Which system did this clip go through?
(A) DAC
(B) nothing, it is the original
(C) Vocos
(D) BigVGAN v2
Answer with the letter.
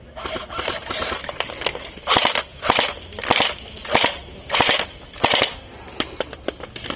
B